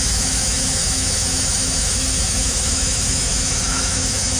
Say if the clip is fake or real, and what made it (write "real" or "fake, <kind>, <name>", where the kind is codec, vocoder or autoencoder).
fake, autoencoder, DAC-VAE